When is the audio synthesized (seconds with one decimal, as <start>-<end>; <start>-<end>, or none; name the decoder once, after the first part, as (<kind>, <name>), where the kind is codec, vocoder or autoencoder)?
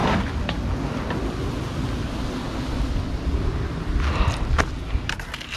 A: none